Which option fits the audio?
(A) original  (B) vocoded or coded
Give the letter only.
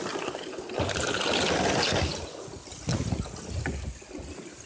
A